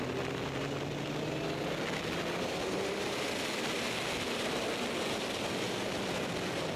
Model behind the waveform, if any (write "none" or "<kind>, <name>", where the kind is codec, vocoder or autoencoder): none